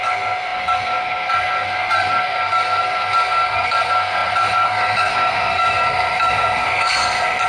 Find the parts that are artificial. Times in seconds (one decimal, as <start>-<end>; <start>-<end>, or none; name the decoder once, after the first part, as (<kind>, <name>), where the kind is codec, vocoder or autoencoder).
0.0-7.5 (codec, SNAC)